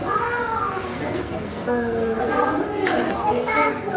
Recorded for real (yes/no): no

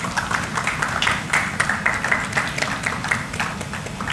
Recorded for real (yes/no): yes